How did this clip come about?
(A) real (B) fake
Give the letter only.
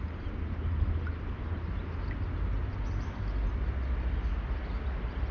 A